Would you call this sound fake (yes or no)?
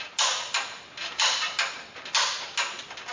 no